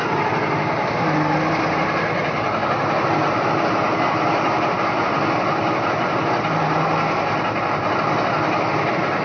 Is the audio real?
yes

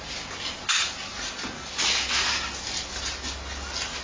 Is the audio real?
yes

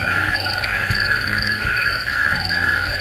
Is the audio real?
no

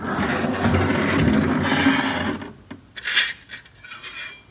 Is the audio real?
yes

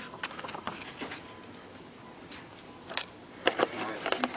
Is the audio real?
yes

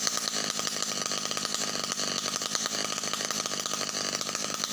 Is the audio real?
yes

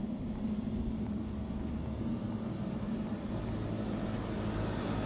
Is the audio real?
yes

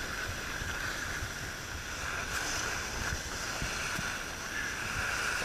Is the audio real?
yes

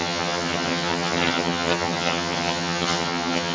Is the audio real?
no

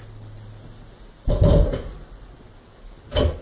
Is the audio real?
yes